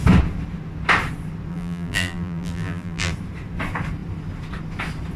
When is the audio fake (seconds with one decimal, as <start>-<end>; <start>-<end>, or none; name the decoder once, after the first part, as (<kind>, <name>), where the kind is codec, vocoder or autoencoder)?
1.5-3.1 (vocoder, BigVGAN v2)